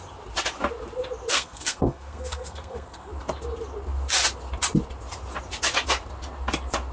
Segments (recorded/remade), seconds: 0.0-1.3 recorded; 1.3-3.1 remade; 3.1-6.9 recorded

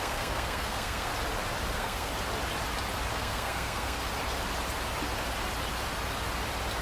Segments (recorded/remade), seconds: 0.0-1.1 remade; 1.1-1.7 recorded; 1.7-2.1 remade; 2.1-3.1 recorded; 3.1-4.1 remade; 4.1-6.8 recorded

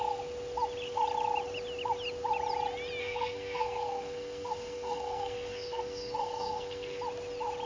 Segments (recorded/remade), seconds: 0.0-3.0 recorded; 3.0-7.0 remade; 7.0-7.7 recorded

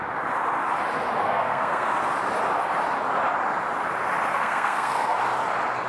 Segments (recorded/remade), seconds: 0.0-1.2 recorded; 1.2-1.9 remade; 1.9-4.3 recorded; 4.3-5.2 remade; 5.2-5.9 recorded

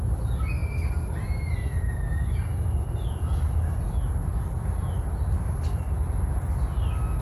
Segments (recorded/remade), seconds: 0.0-7.2 recorded

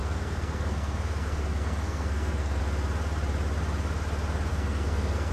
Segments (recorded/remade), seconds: 0.0-2.6 remade; 2.6-4.5 recorded; 4.5-5.3 remade